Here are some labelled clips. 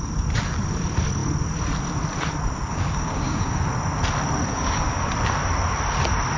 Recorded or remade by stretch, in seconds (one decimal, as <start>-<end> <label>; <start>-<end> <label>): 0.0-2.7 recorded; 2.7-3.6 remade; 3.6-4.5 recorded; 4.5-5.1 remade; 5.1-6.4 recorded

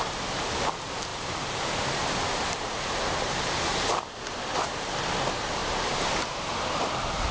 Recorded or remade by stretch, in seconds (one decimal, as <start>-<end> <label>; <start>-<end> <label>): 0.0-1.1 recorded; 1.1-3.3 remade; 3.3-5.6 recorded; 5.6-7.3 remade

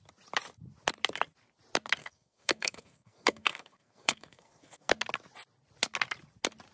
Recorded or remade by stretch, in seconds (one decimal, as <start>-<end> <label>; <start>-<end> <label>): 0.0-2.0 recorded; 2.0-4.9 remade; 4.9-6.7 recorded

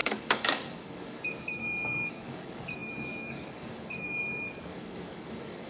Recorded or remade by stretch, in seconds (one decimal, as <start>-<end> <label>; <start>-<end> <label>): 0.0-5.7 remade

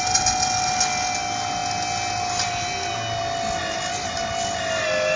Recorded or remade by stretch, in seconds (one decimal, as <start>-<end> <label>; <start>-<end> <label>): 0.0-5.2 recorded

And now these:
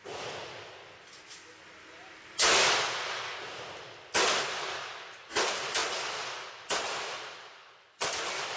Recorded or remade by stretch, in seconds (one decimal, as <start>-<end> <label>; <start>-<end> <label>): 0.0-8.6 recorded

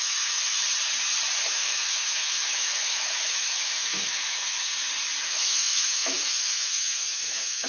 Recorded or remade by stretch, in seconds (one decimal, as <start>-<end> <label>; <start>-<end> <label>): 0.0-0.6 remade; 0.6-1.4 recorded; 1.4-4.7 remade; 4.7-5.2 recorded; 5.2-7.7 remade

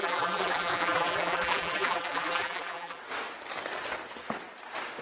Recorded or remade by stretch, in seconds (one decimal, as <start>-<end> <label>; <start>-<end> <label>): 0.0-3.0 remade; 3.0-5.0 recorded